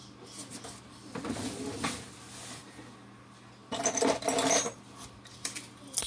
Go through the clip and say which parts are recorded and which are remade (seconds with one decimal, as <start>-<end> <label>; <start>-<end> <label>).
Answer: 0.0-6.1 recorded